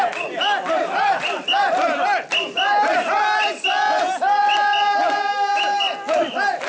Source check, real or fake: real